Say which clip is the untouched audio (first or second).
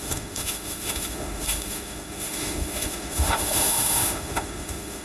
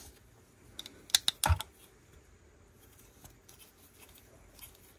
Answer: second